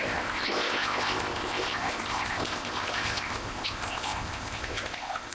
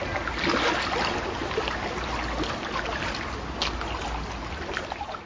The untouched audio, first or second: second